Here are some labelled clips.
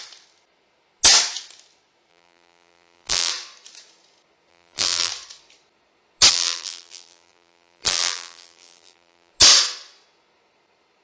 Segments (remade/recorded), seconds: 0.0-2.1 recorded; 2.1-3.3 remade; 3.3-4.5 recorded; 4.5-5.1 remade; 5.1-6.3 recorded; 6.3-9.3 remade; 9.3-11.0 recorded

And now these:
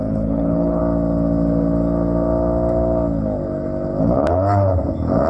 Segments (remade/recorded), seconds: 0.0-0.8 remade; 0.8-4.0 recorded; 4.0-4.7 remade; 4.7-5.3 recorded

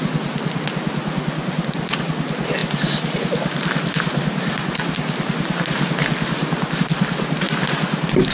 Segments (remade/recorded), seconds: 0.0-8.3 recorded

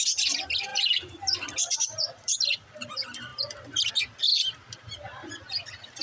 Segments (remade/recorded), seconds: 0.0-0.7 recorded; 0.7-2.7 remade; 2.7-6.0 recorded

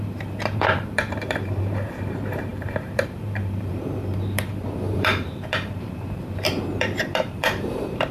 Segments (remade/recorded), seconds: 0.0-8.1 remade

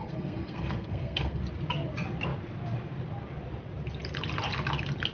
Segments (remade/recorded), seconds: 0.0-1.4 remade; 1.4-5.1 recorded

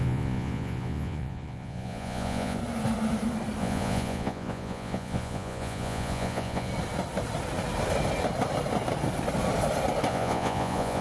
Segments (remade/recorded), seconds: 0.0-2.6 remade; 2.6-3.6 recorded; 3.6-6.7 remade; 6.7-10.1 recorded; 10.1-11.0 remade

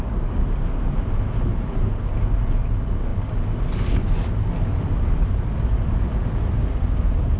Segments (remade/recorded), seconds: 0.0-7.4 recorded